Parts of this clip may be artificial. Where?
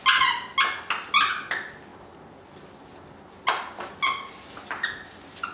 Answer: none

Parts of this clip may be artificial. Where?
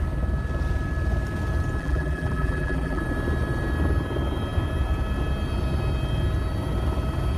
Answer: 1.8-3.0 (vocoder, BigVGAN v2)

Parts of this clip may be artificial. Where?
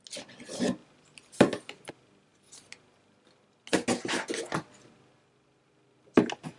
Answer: none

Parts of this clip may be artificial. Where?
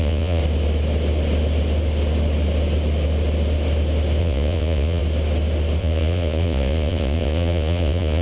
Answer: 0.0-0.4 (vocoder, Vocos); 4.2-5.0; 5.8-8.2